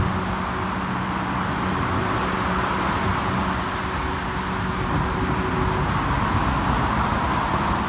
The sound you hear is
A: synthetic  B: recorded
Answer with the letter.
B